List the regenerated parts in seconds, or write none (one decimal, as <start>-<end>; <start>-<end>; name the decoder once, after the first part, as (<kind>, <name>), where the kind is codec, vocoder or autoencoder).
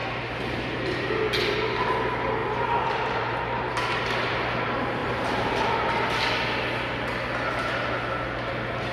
0.0-1.0 (vocoder, BigVGAN v2); 2.4-3.7; 5.0-5.9